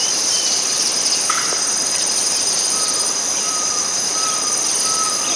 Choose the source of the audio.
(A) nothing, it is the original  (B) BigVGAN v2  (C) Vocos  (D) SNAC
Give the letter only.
B